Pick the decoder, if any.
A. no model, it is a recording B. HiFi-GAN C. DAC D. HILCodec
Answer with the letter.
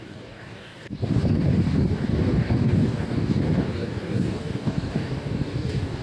C